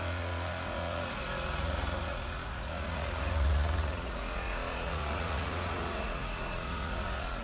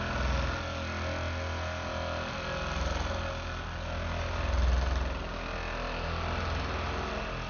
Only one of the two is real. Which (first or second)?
second